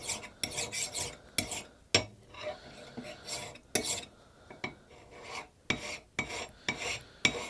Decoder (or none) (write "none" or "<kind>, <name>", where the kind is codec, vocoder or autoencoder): none